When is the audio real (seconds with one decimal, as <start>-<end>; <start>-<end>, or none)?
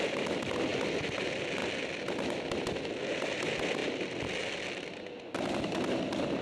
0.0-6.4